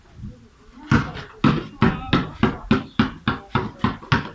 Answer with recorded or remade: recorded